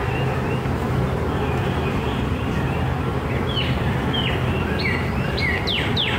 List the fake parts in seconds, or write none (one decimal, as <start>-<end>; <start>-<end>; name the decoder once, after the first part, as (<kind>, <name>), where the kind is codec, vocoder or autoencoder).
none

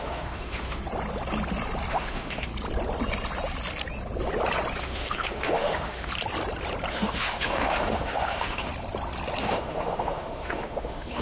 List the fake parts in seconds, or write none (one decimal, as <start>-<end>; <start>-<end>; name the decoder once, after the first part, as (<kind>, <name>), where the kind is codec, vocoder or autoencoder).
0.0-0.8 (autoencoder, DAC-VAE); 1.9-2.5; 4.8-6.1; 6.9-8.7; 9.4-11.2

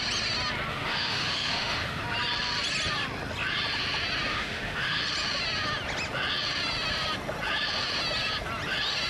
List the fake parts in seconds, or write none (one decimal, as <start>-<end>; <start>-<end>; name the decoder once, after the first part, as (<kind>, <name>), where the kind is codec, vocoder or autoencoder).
0.7-2.0 (autoencoder, DAC-VAE); 4.3-5.0

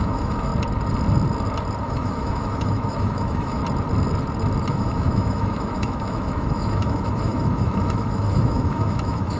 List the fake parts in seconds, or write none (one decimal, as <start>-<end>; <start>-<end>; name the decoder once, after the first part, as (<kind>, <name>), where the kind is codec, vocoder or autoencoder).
0.0-0.5 (autoencoder, DAC-VAE); 1.8-3.6; 4.7-9.4

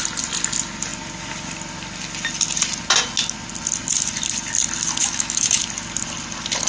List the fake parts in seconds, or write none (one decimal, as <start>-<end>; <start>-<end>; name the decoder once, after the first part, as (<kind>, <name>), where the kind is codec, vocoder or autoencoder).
5.0-5.6 (autoencoder, DAC-VAE)

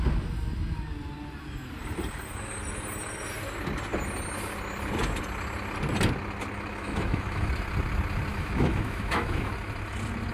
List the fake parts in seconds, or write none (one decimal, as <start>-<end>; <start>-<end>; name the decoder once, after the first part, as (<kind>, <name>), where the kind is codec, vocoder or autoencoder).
6.7-7.5 (autoencoder, DAC-VAE); 8.3-9.5